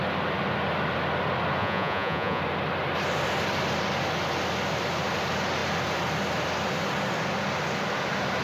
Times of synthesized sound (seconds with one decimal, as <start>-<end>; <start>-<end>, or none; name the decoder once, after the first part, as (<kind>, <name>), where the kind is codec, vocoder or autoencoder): 1.6-2.4 (vocoder, Vocos)